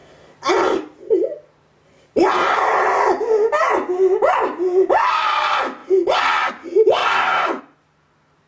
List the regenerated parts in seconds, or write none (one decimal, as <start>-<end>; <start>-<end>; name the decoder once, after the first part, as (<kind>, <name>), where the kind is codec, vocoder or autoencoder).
none

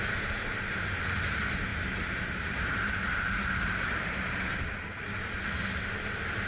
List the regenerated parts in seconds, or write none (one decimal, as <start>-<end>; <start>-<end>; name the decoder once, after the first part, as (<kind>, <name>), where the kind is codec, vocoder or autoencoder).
1.7-4.4 (vocoder, BigVGAN v2)

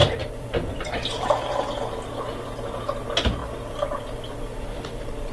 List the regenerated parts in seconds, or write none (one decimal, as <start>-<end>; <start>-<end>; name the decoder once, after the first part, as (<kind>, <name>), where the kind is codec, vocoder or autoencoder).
0.0-1.5 (vocoder, BigVGAN v2); 3.4-5.3

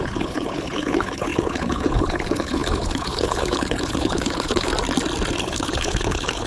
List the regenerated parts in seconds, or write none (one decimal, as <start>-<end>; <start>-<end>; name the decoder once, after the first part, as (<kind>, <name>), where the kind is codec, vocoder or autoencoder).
0.0-4.7 (codec, HILCodec); 5.4-6.5

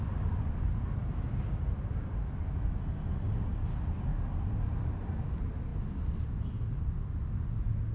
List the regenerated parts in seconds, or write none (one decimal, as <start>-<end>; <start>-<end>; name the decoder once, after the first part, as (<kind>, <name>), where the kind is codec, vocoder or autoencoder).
none